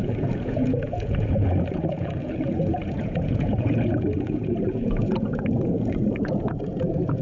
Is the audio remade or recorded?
remade